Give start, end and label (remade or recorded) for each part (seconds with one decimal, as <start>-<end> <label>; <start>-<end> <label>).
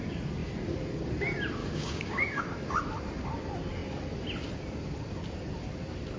0.0-1.6 recorded; 1.6-2.4 remade; 2.4-6.2 recorded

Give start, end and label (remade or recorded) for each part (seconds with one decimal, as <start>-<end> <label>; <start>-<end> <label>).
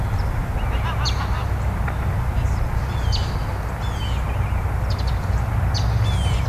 0.0-6.5 recorded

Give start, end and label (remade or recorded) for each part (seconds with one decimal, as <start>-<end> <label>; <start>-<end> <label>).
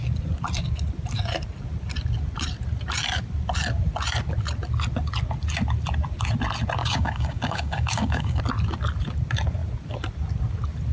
0.0-6.8 recorded; 6.8-8.4 remade; 8.4-10.9 recorded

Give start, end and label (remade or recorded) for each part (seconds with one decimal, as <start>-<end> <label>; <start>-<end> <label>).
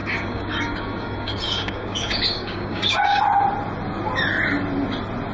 0.0-3.2 remade; 3.2-5.3 recorded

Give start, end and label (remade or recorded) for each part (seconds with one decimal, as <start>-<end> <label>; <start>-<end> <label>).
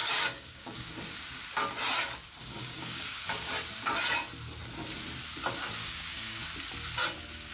0.0-0.9 remade; 0.9-2.4 recorded; 2.4-3.5 remade; 3.5-5.8 recorded; 5.8-6.4 remade; 6.4-7.5 recorded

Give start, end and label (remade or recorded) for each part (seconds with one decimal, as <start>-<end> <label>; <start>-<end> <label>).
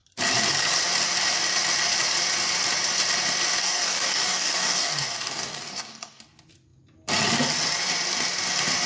0.0-3.6 recorded; 3.6-6.2 remade; 6.2-8.9 recorded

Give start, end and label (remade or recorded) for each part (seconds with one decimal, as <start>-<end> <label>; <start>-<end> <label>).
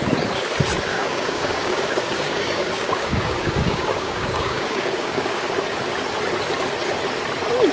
0.0-0.9 recorded; 0.9-5.5 remade; 5.5-7.7 recorded